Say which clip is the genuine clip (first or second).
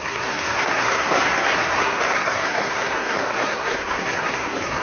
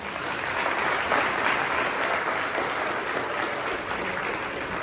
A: second